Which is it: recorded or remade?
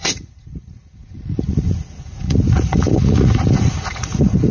remade